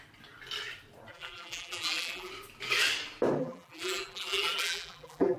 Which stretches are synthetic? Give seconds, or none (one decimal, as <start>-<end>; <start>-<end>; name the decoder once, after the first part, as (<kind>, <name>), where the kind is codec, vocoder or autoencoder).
1.1-2.3 (vocoder, BigVGAN v2); 3.4-5.4